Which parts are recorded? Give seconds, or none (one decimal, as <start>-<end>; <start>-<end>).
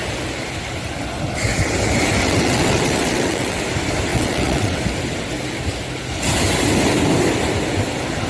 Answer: 0.0-2.2; 3.6-4.1; 4.8-8.3